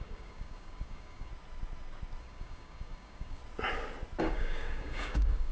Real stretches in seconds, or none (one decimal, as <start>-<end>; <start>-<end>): 1.3-2.2; 3.4-4.2